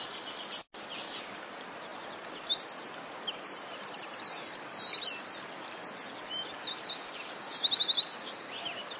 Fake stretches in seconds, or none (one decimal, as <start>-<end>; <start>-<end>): none